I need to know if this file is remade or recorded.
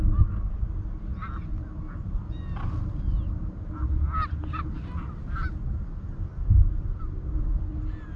recorded